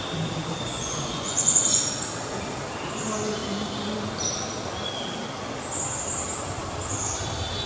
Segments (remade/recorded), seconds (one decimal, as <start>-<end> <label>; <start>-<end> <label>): 0.0-0.7 recorded; 0.7-1.8 remade; 1.8-7.7 recorded